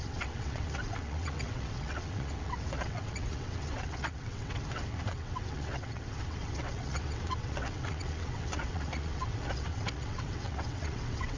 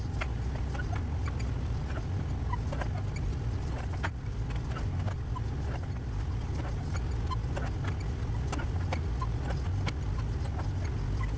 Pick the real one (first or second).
second